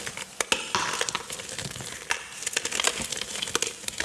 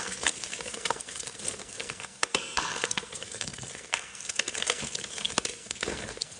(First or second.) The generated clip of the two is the second